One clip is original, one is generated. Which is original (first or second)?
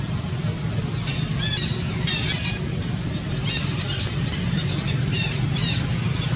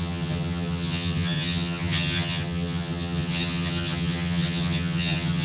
first